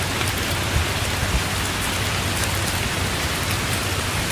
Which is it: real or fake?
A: real